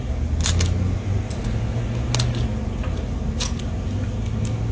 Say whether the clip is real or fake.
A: real